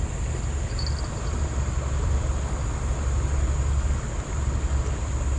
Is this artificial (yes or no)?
no